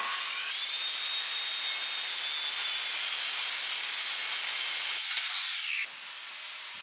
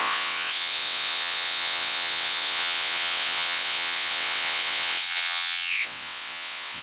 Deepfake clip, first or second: second